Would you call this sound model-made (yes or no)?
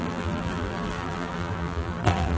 yes